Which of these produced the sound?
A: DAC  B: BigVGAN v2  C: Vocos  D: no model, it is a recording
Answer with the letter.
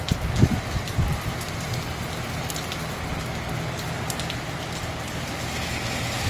D